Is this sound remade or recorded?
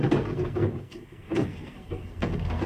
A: remade